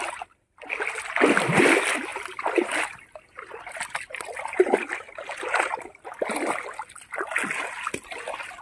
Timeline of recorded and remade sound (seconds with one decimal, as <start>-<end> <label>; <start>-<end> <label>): 0.0-8.6 recorded

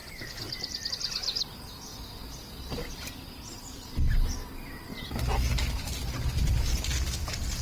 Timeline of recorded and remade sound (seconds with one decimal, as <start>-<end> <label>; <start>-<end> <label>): 0.0-0.9 remade; 0.9-7.6 recorded

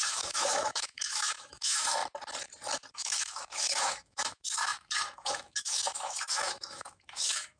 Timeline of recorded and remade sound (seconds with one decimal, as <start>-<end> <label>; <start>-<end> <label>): 0.0-2.0 remade; 2.0-2.9 recorded; 2.9-7.6 remade

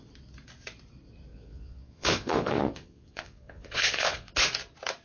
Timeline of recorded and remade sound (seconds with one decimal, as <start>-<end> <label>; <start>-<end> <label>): 0.0-1.3 recorded; 1.3-4.3 remade; 4.3-5.0 recorded

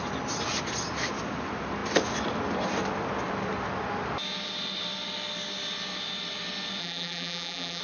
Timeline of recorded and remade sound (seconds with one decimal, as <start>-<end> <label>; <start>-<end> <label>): 0.0-6.8 recorded; 6.8-7.8 remade

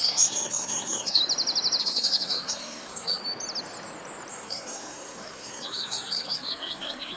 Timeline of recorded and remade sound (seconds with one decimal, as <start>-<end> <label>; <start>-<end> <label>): 0.0-1.2 remade; 1.2-1.8 recorded; 1.8-3.2 remade; 3.2-4.3 recorded; 4.3-7.2 remade

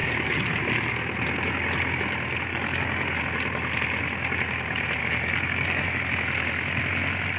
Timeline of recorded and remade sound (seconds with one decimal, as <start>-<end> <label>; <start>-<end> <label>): 0.0-0.6 remade; 0.6-2.5 recorded; 2.5-3.2 remade; 3.2-5.0 recorded; 5.0-6.0 remade; 6.0-7.4 recorded